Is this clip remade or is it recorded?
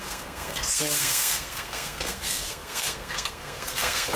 remade